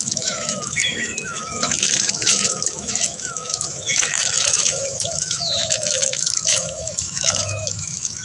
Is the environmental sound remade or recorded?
remade